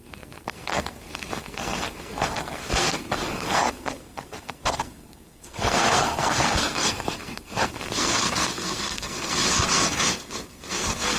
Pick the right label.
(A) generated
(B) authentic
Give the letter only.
A